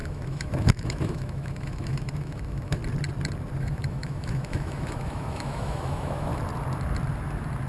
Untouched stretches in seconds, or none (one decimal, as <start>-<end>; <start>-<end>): 2.8-3.6; 6.3-7.7